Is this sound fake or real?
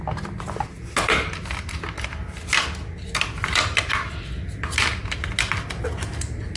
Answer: real